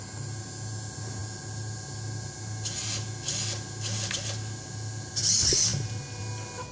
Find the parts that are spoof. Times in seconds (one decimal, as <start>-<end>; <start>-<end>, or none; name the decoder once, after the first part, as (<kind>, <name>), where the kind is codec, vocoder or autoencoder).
none